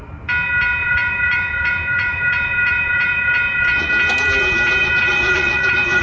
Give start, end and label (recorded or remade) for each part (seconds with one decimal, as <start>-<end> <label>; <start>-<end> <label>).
0.0-0.8 recorded; 0.8-3.9 remade; 3.9-4.8 recorded; 4.8-6.0 remade